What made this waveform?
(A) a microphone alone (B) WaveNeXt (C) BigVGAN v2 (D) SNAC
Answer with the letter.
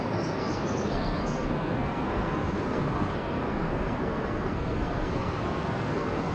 D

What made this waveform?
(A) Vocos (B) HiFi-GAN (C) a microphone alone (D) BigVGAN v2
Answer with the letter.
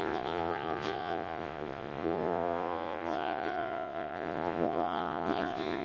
A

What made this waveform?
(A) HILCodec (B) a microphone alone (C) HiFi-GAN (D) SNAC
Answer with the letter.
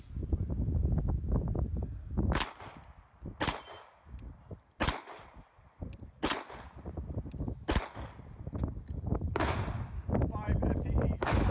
B